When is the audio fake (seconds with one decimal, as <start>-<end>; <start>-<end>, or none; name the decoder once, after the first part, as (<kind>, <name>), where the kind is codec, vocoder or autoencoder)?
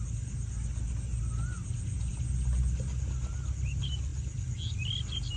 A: none